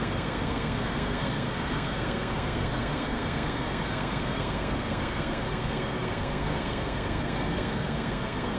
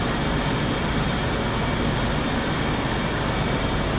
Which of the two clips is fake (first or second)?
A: first